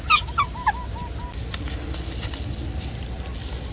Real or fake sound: real